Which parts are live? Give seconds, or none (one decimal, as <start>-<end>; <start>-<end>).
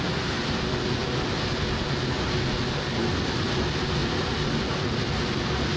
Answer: 0.0-5.8